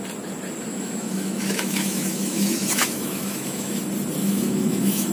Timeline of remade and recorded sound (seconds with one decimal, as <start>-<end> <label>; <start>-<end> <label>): 0.0-0.7 recorded; 0.7-3.8 remade; 3.8-4.2 recorded; 4.2-5.1 remade